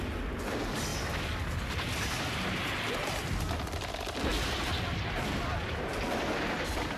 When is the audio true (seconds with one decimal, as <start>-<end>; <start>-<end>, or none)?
0.0-7.0

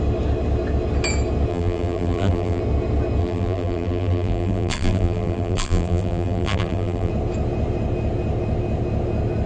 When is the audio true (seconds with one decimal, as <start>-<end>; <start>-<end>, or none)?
0.0-1.5; 2.6-3.2; 7.1-9.5

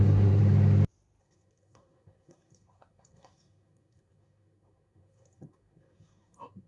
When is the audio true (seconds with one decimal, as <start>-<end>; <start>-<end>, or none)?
0.4-1.2

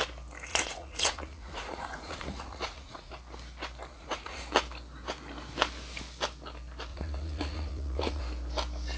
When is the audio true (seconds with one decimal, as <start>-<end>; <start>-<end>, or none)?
0.0-0.5; 3.1-3.9; 4.4-6.9; 8.2-9.0